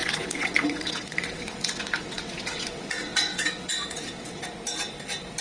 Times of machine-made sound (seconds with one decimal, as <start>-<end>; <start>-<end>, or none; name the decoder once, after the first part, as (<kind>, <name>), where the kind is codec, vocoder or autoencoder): 0.0-4.4 (vocoder, WaveNeXt)